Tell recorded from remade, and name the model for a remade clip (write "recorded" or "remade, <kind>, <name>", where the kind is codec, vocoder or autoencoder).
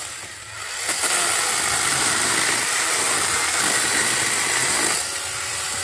recorded